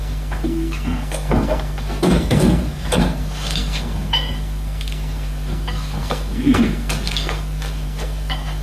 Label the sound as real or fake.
fake